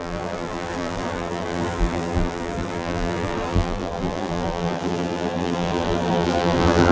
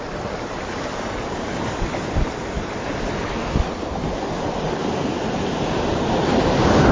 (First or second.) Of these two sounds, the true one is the second